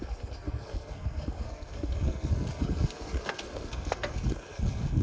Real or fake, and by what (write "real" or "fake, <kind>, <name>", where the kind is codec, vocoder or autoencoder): fake, codec, SNAC